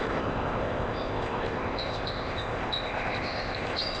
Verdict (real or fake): fake